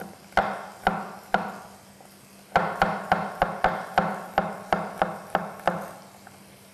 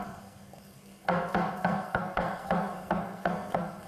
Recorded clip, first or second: first